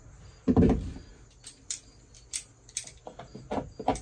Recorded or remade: recorded